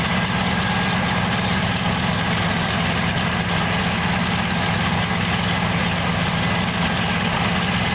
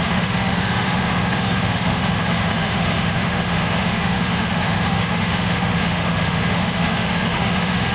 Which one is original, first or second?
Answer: first